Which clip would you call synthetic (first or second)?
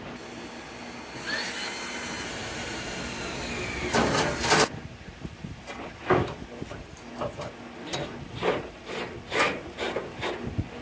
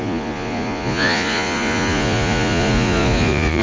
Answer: second